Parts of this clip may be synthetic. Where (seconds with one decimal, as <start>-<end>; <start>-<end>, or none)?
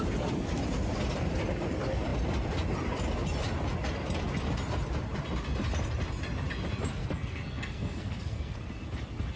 7.0-8.7